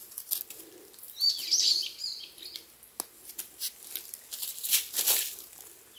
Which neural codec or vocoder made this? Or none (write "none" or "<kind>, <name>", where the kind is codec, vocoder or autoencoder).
none